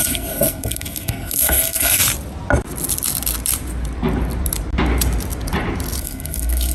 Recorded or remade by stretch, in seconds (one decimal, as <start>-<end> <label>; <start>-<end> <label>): 0.0-2.0 remade; 2.0-6.0 recorded; 6.0-6.7 remade